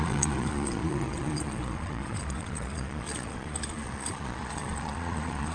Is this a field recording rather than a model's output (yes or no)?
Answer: no